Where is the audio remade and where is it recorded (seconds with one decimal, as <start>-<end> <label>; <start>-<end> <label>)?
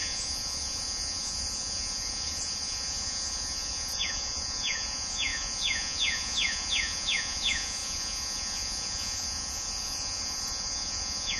0.0-11.4 remade